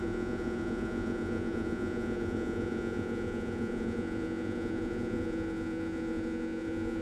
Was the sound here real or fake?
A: fake